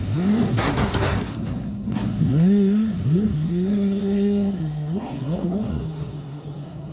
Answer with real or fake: fake